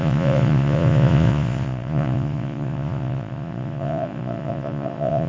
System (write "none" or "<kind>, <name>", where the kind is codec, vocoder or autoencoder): vocoder, Vocos